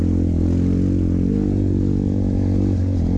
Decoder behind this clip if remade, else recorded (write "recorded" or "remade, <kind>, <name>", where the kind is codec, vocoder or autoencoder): recorded